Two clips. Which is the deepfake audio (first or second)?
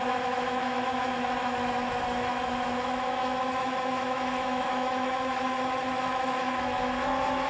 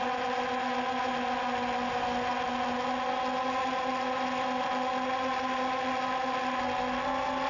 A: first